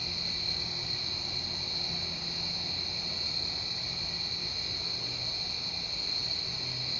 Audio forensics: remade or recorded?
recorded